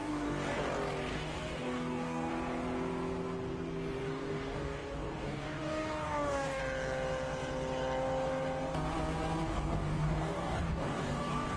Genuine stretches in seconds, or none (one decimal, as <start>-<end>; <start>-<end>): 0.6-1.1; 2.3-4.0; 6.6-9.4